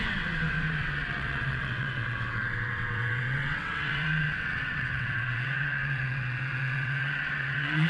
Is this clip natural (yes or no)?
no